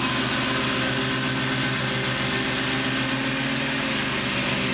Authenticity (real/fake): real